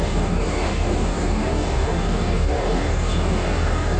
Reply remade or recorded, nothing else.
remade